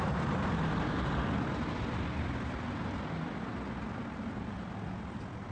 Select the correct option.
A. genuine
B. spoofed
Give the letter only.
A